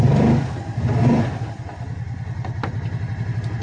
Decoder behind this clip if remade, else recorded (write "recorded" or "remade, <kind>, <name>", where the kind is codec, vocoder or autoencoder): recorded